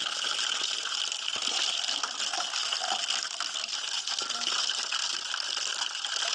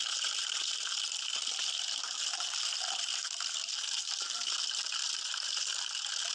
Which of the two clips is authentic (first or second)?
first